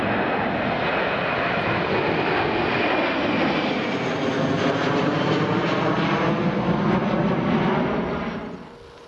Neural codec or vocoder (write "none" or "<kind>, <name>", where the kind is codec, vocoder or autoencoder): none